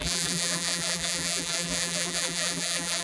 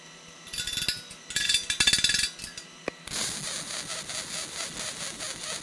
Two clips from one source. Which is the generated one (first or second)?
first